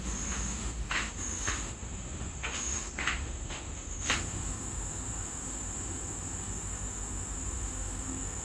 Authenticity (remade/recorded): remade